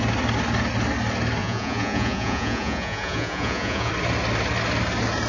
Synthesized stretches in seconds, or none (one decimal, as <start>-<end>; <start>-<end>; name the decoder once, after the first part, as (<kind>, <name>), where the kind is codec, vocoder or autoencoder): 1.4-3.9 (vocoder, Vocos)